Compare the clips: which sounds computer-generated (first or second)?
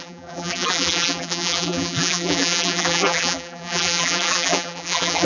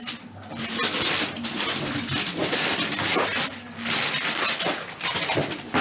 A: first